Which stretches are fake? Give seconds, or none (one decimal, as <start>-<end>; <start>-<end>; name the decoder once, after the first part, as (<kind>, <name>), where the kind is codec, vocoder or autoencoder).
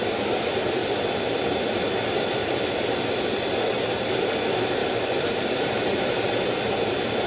4.8-6.3 (vocoder, BigVGAN v2)